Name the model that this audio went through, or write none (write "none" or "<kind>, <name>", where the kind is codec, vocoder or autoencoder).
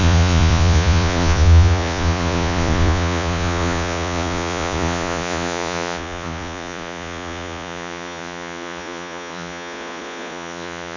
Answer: vocoder, Vocos